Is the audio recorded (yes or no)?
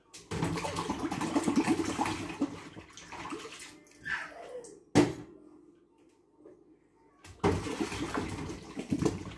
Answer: yes